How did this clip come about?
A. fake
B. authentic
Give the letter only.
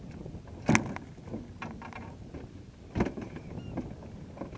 B